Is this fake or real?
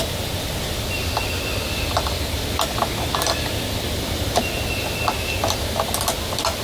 real